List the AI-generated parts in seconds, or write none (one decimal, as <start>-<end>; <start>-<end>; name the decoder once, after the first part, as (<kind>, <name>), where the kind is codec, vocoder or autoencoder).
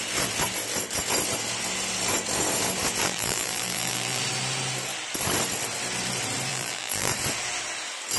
3.0-4.2 (vocoder, BigVGAN v2); 6.5-7.1